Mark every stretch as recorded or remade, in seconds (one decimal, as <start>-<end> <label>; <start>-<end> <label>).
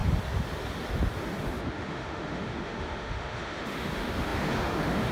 0.0-1.4 recorded; 1.4-5.1 remade